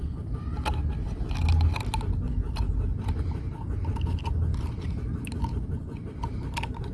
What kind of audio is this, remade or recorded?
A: recorded